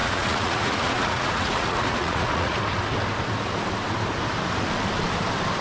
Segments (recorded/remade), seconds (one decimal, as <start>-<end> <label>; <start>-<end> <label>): 0.0-2.6 remade; 2.6-5.6 recorded